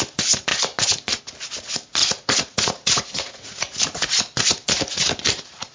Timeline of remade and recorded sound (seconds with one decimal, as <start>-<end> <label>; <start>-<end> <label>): 0.0-2.0 recorded; 2.0-3.8 remade; 3.8-5.7 recorded